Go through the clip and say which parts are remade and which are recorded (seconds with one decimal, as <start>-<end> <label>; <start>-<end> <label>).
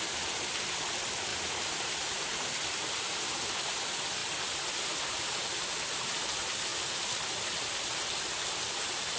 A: 0.0-1.3 remade; 1.3-1.9 recorded; 1.9-9.2 remade